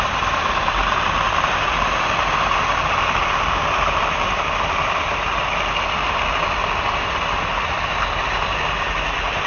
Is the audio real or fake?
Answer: real